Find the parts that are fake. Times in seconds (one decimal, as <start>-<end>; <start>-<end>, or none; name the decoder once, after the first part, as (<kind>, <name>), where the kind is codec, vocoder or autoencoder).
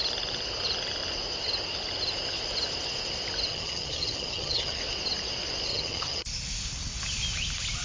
3.5-4.8 (vocoder, HiFi-GAN); 5.7-6.3